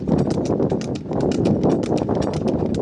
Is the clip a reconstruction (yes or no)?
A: no